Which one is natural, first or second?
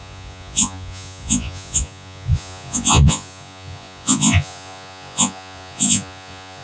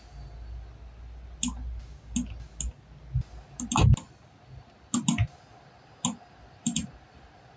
second